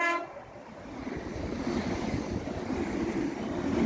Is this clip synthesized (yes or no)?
no